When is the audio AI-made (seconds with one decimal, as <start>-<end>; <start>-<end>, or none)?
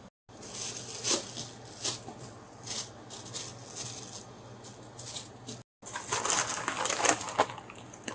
none